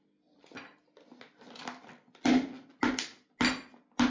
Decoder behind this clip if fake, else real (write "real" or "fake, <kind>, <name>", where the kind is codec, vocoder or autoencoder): real